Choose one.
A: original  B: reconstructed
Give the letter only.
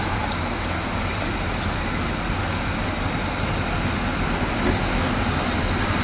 A